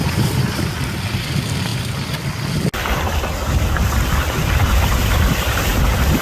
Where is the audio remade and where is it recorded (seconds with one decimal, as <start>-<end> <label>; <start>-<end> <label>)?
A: 0.0-6.2 recorded